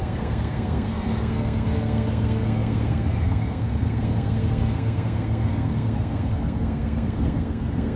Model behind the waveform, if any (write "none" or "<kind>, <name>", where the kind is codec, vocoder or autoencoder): codec, SNAC